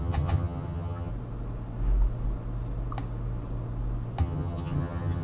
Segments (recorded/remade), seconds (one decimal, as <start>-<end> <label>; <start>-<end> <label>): 0.0-1.1 remade; 1.1-4.2 recorded; 4.2-5.2 remade

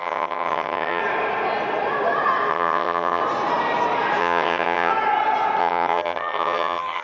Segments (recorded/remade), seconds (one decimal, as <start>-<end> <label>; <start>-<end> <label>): 0.0-1.0 remade; 1.0-2.5 recorded; 2.5-3.2 remade; 3.2-4.2 recorded; 4.2-4.9 remade; 4.9-5.6 recorded; 5.6-7.0 remade